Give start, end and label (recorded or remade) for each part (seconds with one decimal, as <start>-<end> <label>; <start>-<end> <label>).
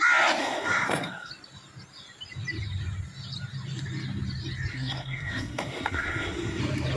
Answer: 0.0-0.4 recorded; 0.4-1.3 remade; 1.3-4.7 recorded; 4.7-6.6 remade; 6.6-7.0 recorded